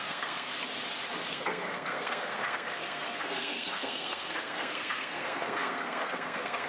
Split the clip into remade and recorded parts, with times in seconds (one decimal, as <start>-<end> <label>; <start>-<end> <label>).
0.0-0.5 remade; 0.5-1.3 recorded; 1.3-6.7 remade